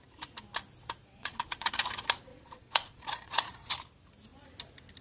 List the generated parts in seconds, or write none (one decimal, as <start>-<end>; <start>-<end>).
1.0-1.7; 2.3-3.7